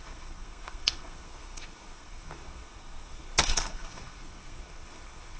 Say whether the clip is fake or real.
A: fake